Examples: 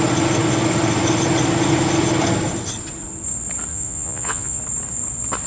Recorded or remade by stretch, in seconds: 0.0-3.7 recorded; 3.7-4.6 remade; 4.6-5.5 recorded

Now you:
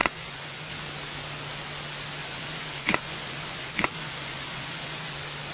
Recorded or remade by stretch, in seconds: 0.0-0.7 remade; 0.7-2.2 recorded; 2.2-5.1 remade; 5.1-5.5 recorded

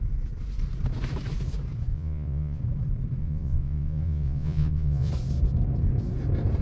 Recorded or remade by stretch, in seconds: 0.0-1.9 recorded; 1.9-2.6 remade; 2.6-3.2 recorded; 3.2-5.1 remade; 5.1-6.6 recorded

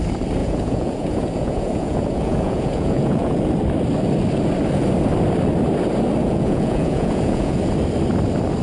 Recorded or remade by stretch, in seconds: 0.0-0.4 recorded; 0.4-3.4 remade; 3.4-6.2 recorded; 6.2-7.6 remade; 7.6-8.6 recorded

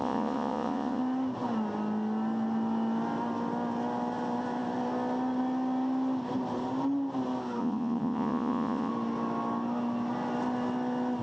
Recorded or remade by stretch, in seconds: 0.0-1.0 remade; 1.0-7.6 recorded; 7.6-8.9 remade; 8.9-11.2 recorded

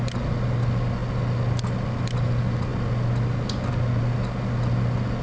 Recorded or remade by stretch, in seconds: 0.0-5.2 recorded

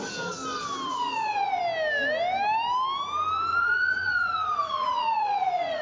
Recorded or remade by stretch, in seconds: 0.0-0.9 recorded; 0.9-1.6 remade; 1.6-3.5 recorded; 3.5-5.8 remade

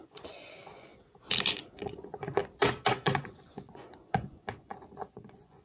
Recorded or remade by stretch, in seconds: 0.0-0.9 remade; 0.9-1.5 recorded; 1.5-2.4 remade; 2.4-2.9 recorded; 2.9-5.6 remade